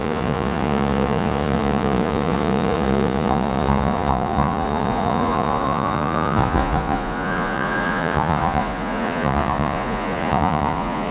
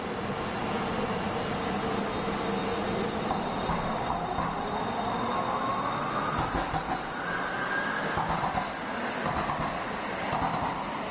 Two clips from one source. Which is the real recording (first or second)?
second